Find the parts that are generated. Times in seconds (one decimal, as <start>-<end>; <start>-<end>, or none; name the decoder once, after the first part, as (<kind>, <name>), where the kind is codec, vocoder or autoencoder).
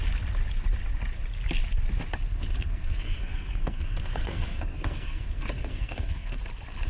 2.3-6.4 (codec, SNAC)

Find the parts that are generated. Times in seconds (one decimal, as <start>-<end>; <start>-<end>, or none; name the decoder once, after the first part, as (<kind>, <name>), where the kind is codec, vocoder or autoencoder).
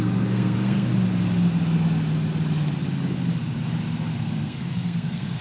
0.0-0.9 (codec, SNAC); 4.1-5.4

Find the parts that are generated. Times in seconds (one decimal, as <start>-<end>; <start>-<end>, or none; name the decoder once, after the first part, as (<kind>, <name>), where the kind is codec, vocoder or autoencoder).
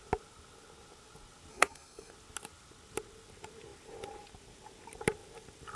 1.5-2.1 (codec, SNAC)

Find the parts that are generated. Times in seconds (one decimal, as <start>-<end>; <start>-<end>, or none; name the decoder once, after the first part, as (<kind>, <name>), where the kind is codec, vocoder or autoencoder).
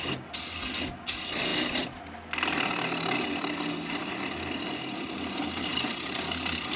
none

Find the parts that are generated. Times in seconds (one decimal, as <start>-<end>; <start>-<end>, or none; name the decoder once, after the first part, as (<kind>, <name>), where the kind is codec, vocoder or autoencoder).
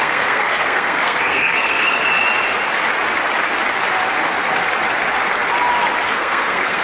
0.0-2.0 (codec, SNAC); 6.1-6.8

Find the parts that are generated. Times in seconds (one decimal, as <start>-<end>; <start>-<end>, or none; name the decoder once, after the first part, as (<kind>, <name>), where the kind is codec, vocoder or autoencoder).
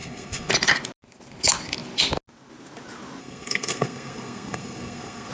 0.0-0.5 (codec, SNAC); 3.2-5.3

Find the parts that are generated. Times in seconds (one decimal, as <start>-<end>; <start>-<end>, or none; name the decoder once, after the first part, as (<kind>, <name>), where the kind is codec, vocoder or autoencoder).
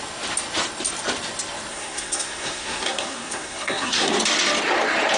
1.7-4.1 (codec, SNAC)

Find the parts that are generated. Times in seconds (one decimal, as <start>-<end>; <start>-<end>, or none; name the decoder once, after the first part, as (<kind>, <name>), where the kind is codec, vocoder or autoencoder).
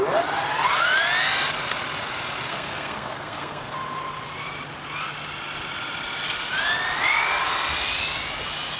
2.5-3.6 (codec, SNAC)